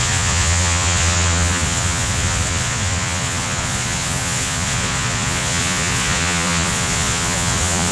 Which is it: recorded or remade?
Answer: remade